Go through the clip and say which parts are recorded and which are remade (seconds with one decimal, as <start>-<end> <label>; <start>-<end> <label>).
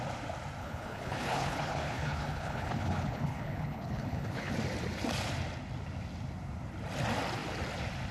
0.0-0.6 recorded; 0.6-4.5 remade; 4.5-8.1 recorded